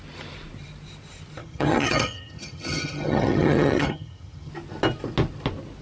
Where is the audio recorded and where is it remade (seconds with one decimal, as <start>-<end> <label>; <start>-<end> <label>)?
0.0-1.4 recorded; 1.4-4.5 remade; 4.5-5.8 recorded